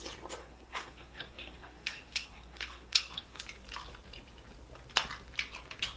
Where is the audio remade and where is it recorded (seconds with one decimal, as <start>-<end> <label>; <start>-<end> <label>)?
0.0-0.4 recorded; 0.4-3.4 remade; 3.4-6.0 recorded